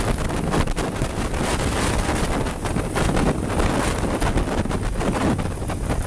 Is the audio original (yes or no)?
yes